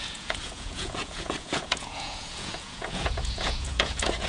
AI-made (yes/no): yes